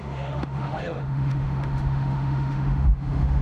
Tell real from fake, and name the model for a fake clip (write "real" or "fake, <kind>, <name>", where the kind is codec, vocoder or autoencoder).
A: fake, autoencoder, DAC-VAE